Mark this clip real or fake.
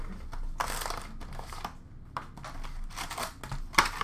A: real